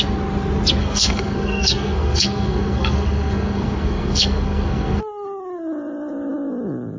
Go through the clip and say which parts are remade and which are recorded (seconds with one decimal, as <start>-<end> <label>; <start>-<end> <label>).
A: 0.0-0.8 recorded; 0.8-5.0 remade; 5.0-7.0 recorded